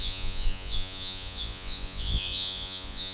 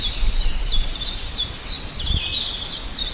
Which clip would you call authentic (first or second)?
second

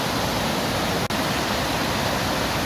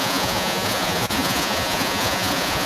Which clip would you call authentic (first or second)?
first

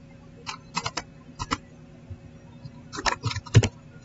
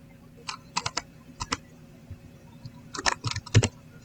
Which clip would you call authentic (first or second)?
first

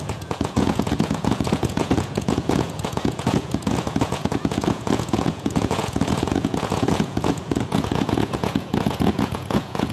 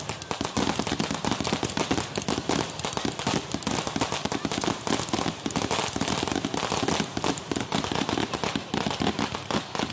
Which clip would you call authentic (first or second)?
second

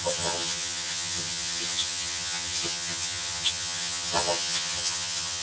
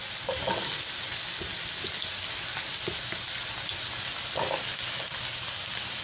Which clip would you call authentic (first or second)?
second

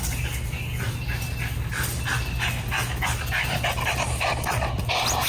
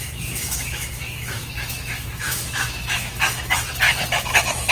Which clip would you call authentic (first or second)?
first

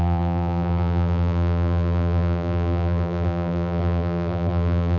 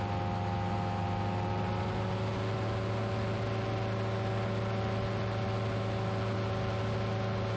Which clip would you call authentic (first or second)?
second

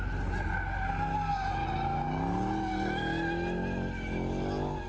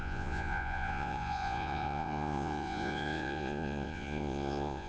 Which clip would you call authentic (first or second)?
first